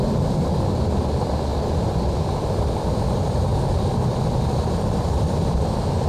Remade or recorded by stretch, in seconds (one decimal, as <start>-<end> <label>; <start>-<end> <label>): 0.0-1.5 recorded; 1.5-2.6 remade; 2.6-3.5 recorded; 3.5-6.1 remade